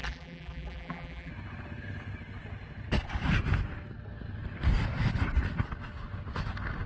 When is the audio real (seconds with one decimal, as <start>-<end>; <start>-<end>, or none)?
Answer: 1.3-6.9